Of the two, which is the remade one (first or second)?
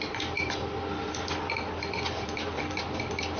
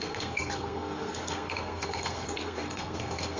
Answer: second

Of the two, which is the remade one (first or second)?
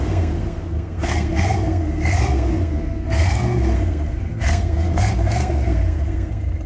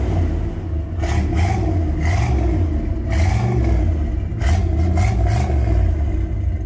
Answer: first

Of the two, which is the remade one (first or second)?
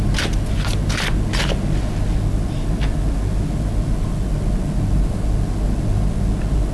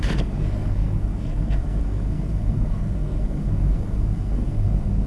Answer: second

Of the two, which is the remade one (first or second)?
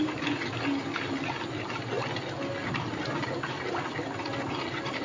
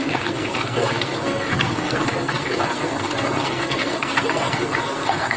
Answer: second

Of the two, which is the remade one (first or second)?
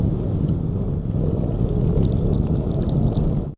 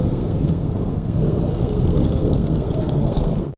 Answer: second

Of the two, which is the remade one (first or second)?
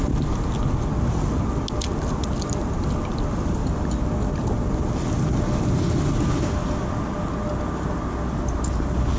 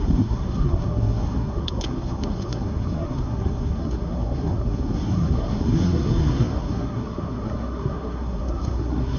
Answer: second